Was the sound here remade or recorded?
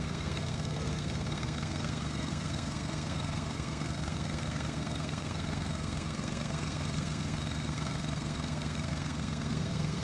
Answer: remade